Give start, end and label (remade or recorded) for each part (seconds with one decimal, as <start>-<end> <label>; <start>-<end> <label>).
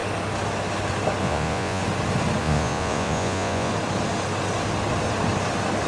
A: 0.0-1.2 recorded; 1.2-1.8 remade; 1.8-2.4 recorded; 2.4-3.7 remade; 3.7-5.9 recorded